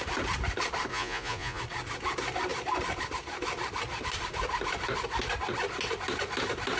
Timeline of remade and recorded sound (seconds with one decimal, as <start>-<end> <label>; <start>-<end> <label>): 0.0-0.9 recorded; 0.9-1.6 remade; 1.6-6.8 recorded